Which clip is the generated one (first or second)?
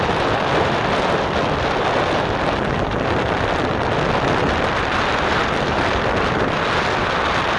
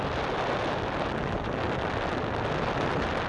first